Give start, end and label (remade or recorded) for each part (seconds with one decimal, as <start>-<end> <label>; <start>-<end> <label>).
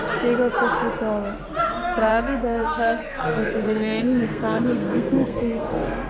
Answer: 0.0-2.1 recorded; 2.1-6.1 remade